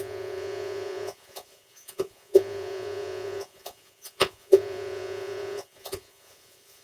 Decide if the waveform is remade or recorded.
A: remade